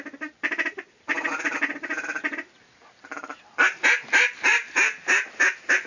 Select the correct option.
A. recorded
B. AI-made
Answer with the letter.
A